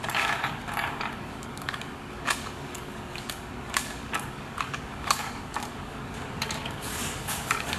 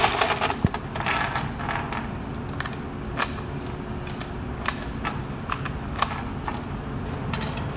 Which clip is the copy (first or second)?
first